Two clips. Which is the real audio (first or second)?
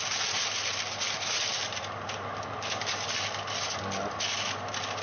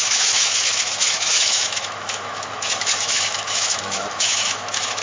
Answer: first